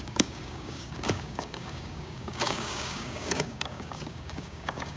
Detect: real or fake fake